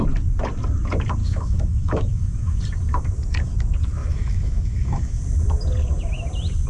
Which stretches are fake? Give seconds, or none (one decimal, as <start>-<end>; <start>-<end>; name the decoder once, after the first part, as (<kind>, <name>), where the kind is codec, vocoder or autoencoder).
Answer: 1.2-2.6 (autoencoder, DAC-VAE); 4.0-5.2

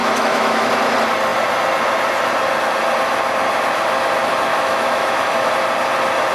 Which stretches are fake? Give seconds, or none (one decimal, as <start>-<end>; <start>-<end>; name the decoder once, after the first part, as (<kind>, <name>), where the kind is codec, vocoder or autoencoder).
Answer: 0.0-0.7 (autoencoder, DAC-VAE); 4.5-5.5